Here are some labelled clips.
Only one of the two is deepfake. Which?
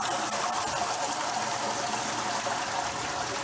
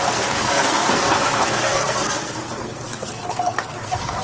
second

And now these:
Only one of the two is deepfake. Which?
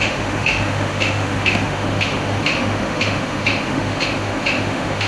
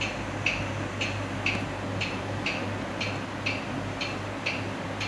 first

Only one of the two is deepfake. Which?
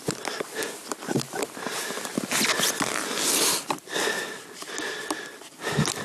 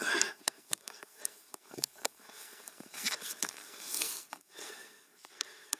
second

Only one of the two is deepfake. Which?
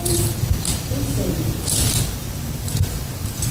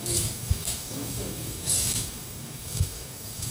second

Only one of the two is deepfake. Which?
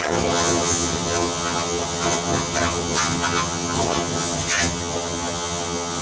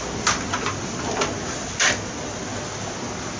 first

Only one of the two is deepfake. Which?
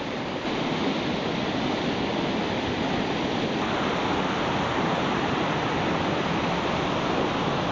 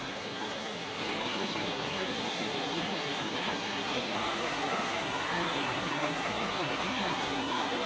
second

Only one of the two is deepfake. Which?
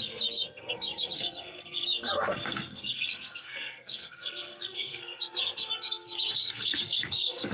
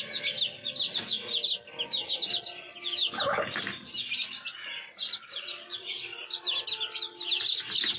first